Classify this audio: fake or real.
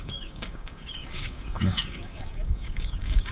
fake